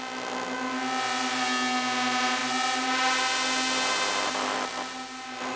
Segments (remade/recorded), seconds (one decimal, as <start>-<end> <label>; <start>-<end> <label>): 0.0-5.6 recorded